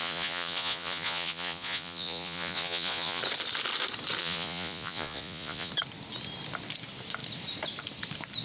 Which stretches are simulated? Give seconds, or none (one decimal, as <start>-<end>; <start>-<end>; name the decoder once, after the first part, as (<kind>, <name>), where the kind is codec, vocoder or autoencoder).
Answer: 0.0-3.2 (vocoder, Vocos); 4.2-5.7